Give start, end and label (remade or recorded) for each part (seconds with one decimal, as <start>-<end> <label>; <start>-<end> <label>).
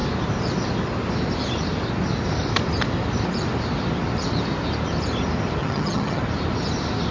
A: 0.0-5.6 recorded; 5.6-6.2 remade; 6.2-7.1 recorded